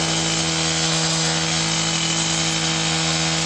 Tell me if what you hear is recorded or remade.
recorded